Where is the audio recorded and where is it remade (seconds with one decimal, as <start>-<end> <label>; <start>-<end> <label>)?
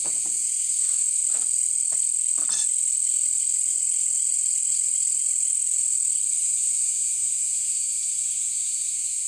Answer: 0.0-1.2 remade; 1.2-6.4 recorded; 6.4-9.3 remade